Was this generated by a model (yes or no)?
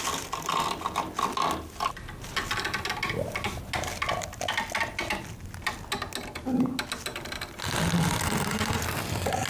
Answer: no